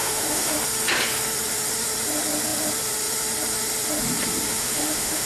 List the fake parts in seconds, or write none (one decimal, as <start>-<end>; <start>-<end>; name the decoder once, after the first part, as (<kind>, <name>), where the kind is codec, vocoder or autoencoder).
0.0-0.5 (autoencoder, DAC-VAE); 4.6-5.3